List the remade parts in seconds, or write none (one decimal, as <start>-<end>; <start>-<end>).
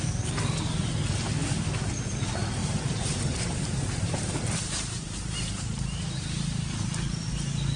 2.6-7.3